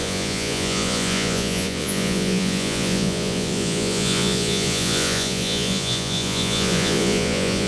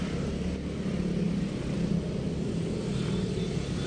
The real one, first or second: second